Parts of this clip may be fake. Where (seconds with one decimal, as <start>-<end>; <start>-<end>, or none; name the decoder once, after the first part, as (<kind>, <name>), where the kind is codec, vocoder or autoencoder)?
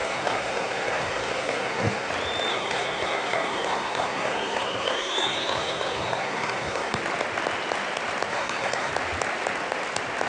0.0-2.1 (codec, SNAC); 2.5-7.0; 8.3-8.9